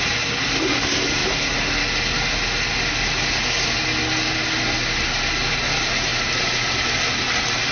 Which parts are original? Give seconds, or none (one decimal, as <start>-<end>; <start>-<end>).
0.0-7.7